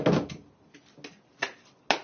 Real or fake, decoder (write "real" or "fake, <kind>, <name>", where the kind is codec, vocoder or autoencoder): real